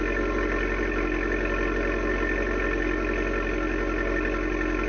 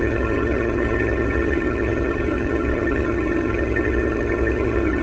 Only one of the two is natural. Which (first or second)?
first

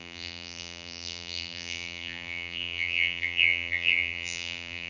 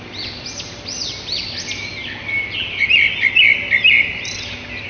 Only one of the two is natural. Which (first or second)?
second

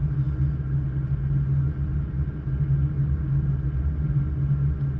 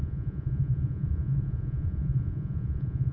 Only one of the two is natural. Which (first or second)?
first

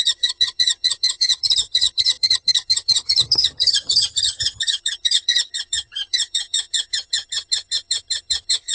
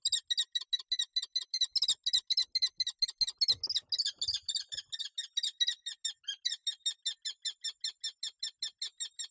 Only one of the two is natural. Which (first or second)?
second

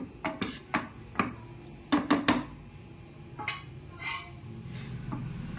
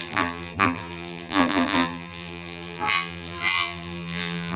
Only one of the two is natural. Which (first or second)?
first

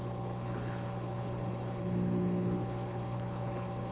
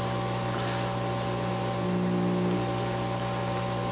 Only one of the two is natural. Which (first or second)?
second